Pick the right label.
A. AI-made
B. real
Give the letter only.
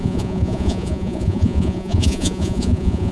A